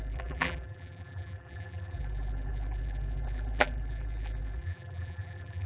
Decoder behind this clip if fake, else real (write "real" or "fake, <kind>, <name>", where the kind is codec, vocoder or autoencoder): fake, vocoder, BigVGAN v2